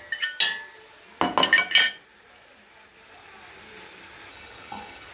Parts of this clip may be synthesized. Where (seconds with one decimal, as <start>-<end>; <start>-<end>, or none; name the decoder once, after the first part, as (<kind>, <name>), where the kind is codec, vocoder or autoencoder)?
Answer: 4.3-5.1 (codec, HILCodec)